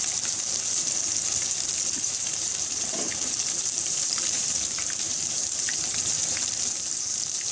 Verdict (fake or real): fake